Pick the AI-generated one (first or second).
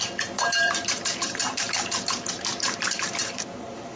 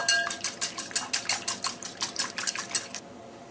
first